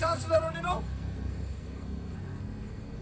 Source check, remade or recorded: remade